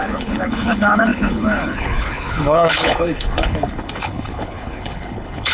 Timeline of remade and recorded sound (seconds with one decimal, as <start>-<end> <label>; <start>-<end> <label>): 0.0-5.5 remade